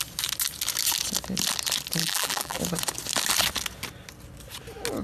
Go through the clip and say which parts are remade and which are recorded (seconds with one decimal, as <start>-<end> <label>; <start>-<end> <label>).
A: 0.0-2.0 recorded; 2.0-2.6 remade; 2.6-5.0 recorded